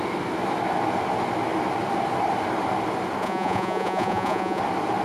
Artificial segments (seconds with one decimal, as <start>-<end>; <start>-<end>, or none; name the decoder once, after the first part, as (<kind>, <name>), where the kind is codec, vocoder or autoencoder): 3.2-4.6 (vocoder, Vocos)